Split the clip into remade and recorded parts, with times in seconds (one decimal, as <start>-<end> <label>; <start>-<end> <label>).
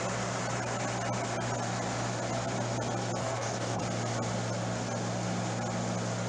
0.0-3.2 recorded; 3.2-3.8 remade; 3.8-6.3 recorded